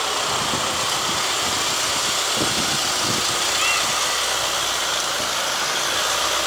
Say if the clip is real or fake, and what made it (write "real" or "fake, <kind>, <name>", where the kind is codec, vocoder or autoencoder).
real